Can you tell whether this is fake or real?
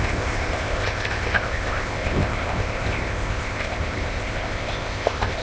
fake